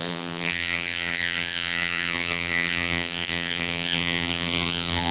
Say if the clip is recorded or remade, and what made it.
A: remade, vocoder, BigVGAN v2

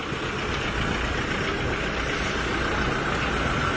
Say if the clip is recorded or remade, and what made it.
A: recorded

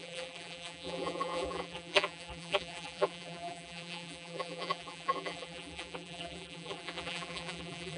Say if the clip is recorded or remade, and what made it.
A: remade, vocoder, BigVGAN v2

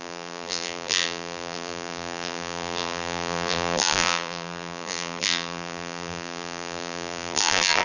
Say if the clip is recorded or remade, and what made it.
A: remade, vocoder, BigVGAN v2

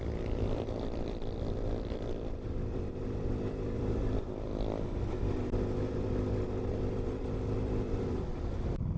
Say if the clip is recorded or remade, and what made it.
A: remade, vocoder, BigVGAN v2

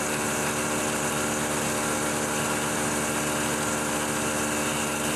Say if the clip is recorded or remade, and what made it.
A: recorded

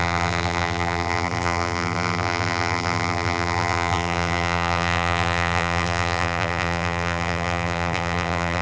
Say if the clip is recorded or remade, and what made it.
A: remade, vocoder, BigVGAN v2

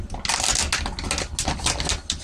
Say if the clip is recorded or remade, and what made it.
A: recorded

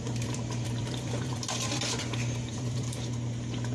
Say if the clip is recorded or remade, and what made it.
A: remade, vocoder, BigVGAN v2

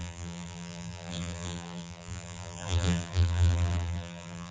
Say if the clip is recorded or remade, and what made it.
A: remade, vocoder, BigVGAN v2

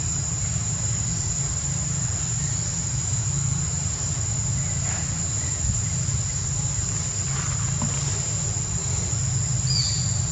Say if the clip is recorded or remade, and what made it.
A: recorded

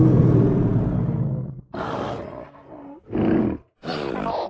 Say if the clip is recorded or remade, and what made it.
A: recorded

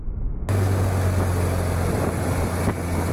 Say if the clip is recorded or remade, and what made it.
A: recorded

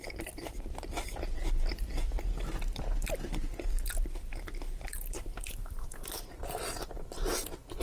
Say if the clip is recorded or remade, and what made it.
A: remade, vocoder, BigVGAN v2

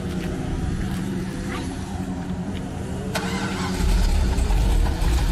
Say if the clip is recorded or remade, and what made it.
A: remade, vocoder, BigVGAN v2